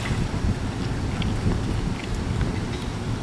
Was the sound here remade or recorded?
recorded